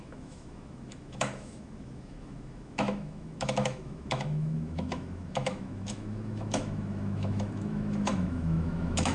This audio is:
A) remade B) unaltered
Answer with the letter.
A